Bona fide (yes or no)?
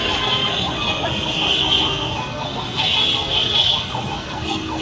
no